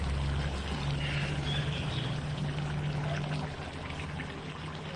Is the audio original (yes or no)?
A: yes